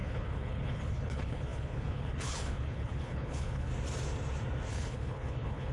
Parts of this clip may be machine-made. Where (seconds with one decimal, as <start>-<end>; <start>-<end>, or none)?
0.0-3.7; 4.7-5.7